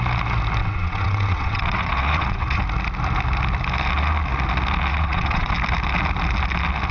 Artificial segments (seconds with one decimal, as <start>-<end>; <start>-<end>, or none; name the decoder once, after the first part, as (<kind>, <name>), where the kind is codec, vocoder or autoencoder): 0.6-2.6 (vocoder, WaveNeXt); 4.9-5.5